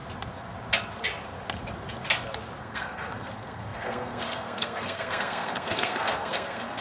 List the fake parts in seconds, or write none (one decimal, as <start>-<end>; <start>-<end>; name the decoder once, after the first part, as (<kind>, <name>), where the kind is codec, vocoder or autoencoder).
2.6-6.8 (codec, SNAC)